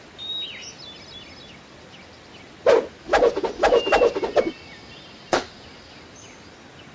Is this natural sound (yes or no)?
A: yes